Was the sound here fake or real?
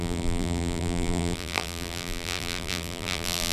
fake